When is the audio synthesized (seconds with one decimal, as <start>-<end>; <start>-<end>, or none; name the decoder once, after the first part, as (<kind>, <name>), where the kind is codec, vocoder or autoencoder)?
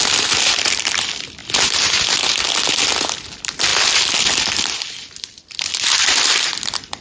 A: 0.0-1.4 (vocoder, BigVGAN v2); 3.3-3.7; 4.2-7.0